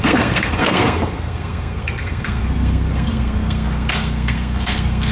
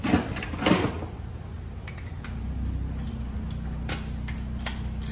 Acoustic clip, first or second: second